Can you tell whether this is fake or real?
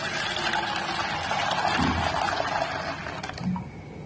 real